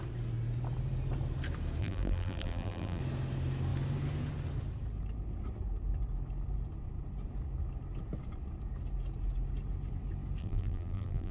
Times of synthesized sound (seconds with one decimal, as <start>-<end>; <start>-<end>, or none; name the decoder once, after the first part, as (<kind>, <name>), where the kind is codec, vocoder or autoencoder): 1.8-3.0 (vocoder, BigVGAN v2); 10.4-11.3